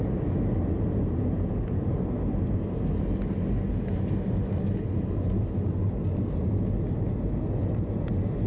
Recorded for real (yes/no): yes